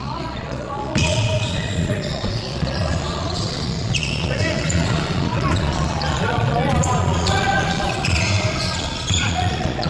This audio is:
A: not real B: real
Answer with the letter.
A